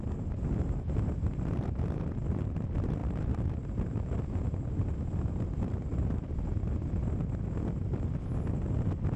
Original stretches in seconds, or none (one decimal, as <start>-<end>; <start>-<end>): 0.0-3.0; 4.4-9.2